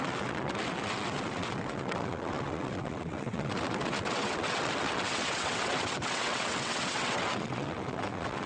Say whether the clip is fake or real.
fake